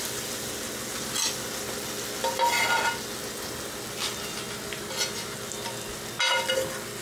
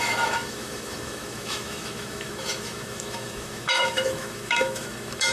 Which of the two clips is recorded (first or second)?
first